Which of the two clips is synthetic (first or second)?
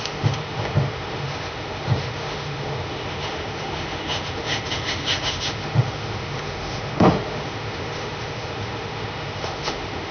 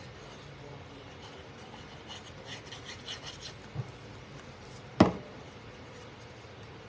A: first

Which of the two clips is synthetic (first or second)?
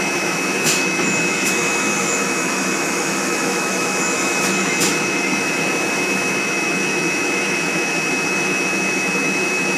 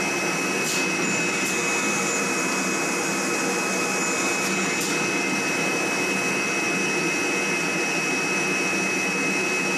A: first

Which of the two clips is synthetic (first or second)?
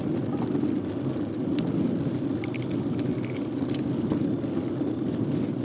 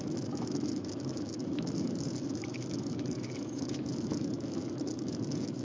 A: second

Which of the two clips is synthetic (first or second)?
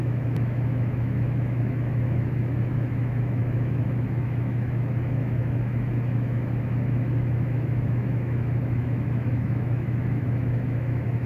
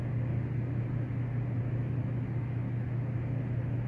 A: first